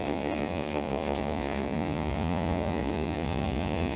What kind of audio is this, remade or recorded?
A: remade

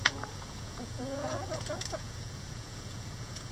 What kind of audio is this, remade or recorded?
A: remade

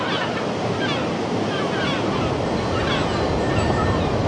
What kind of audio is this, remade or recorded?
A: recorded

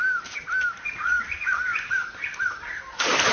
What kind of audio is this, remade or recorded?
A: recorded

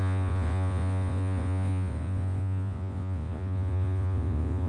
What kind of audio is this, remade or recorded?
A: remade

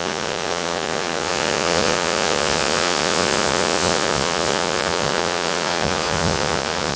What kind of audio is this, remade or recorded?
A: remade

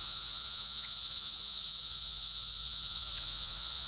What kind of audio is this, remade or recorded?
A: remade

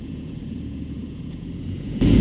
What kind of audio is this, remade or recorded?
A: remade